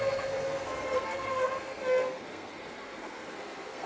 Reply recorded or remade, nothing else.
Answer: remade